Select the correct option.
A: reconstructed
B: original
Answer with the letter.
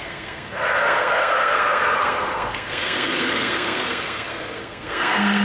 A